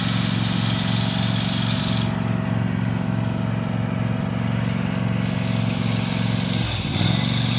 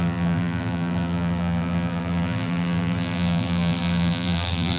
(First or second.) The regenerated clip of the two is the second